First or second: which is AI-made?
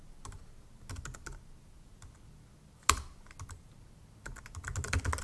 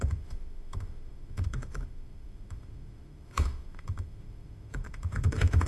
second